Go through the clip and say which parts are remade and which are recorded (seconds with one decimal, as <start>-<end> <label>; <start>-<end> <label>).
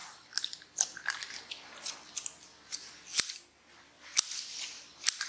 0.0-5.3 recorded